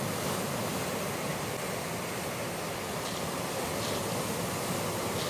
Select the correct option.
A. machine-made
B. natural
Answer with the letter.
B